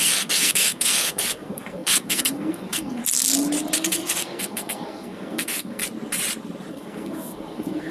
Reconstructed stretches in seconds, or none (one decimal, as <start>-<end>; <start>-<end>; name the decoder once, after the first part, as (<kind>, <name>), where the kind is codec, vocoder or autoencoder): 0.0-3.0 (codec, SNAC); 3.8-5.8; 6.7-7.9